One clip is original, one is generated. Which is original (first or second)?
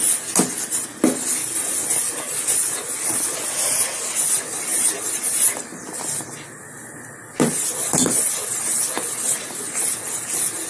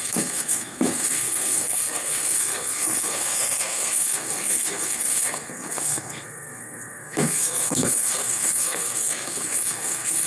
first